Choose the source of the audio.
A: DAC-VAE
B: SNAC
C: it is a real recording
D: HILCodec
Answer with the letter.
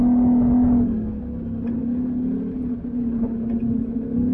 C